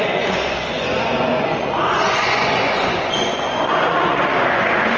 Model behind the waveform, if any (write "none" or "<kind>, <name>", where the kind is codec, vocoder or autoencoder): vocoder, Vocos